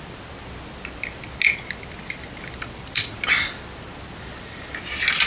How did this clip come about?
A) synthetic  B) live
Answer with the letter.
B